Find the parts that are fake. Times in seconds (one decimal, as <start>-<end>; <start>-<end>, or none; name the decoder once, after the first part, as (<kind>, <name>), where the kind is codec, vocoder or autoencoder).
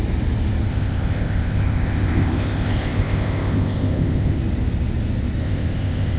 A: 0.7-4.4 (codec, ZipCodec); 5.4-6.2